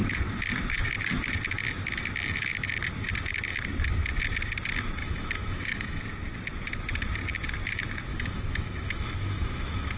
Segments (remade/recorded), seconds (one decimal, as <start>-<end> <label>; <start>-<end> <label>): 0.0-5.0 recorded; 5.0-6.0 remade; 6.0-8.1 recorded; 8.1-10.0 remade